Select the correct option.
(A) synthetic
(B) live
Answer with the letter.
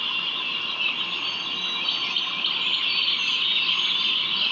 B